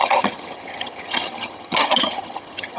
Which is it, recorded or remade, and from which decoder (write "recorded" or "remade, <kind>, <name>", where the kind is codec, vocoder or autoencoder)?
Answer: remade, vocoder, HiFi-GAN